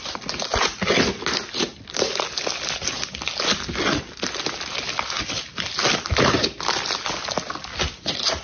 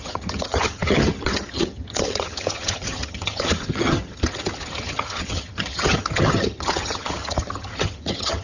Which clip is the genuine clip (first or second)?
first